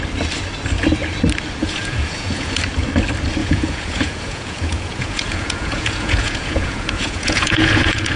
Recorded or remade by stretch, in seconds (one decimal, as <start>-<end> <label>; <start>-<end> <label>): 0.0-1.6 recorded; 1.6-2.6 remade; 2.6-3.4 recorded; 3.4-8.2 remade